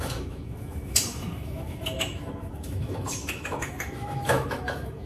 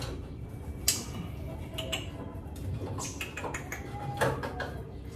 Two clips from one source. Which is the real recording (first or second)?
second